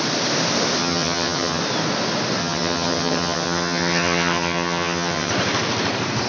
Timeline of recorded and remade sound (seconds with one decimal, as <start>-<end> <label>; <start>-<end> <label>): 0.0-0.8 recorded; 0.8-1.6 remade; 1.6-2.4 recorded; 2.4-5.3 remade; 5.3-6.3 recorded